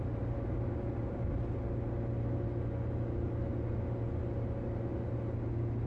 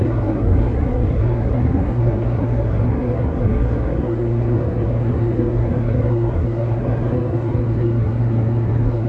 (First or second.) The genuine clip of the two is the first